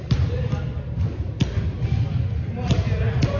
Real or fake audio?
real